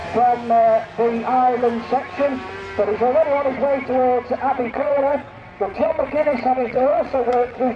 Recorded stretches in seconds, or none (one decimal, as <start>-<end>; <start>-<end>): 0.0-4.7